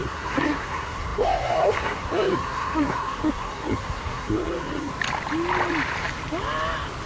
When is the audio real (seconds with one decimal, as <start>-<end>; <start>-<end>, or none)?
4.9-7.1